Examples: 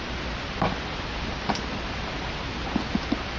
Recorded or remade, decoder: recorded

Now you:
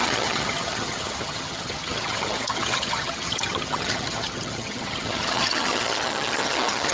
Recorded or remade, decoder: remade, vocoder, HiFi-GAN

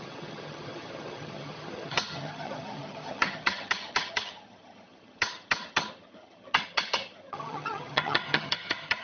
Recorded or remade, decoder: remade, vocoder, HiFi-GAN